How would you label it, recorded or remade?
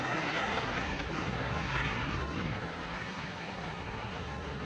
remade